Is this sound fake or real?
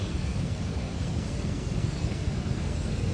fake